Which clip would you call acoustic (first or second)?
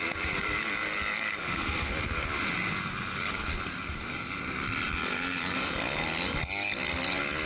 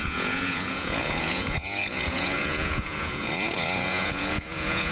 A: first